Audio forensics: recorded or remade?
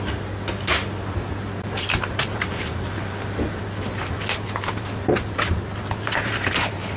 recorded